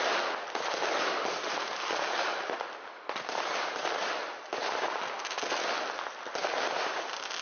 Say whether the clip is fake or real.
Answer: real